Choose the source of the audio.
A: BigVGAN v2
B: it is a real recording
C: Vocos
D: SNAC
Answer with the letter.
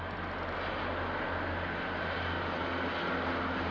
B